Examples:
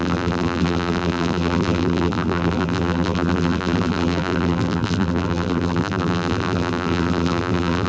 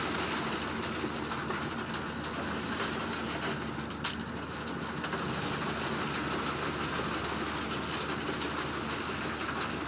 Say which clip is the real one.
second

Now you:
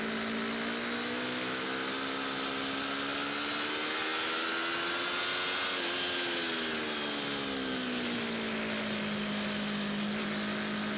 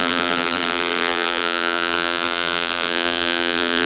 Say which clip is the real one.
first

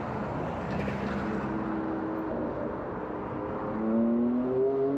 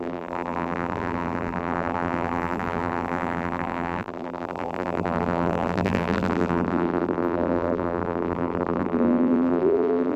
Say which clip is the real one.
first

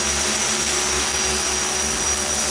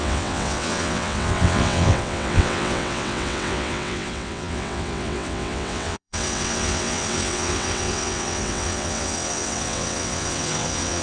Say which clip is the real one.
first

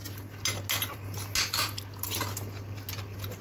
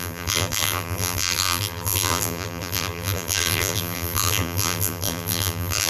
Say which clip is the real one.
first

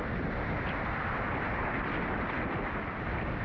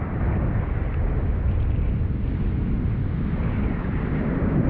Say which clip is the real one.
second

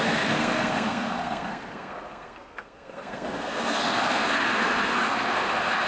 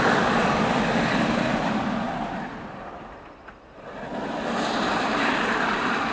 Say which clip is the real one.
second